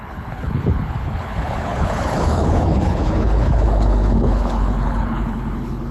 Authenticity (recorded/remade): remade